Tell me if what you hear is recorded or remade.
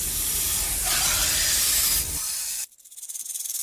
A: remade